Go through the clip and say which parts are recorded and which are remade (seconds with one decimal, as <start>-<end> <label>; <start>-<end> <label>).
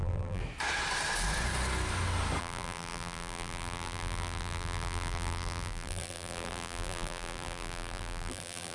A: 0.0-0.4 remade; 0.4-2.4 recorded; 2.4-8.7 remade